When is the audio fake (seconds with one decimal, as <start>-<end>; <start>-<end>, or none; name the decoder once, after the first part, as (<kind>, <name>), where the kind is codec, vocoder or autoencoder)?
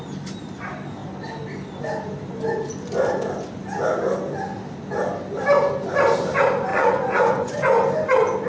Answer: 6.7-7.6 (vocoder, Vocos)